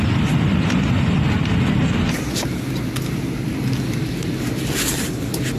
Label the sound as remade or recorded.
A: recorded